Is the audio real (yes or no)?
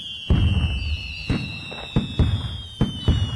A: yes